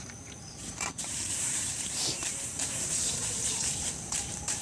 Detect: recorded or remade remade